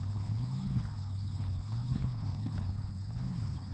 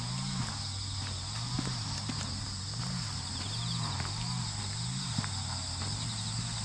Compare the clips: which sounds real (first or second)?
second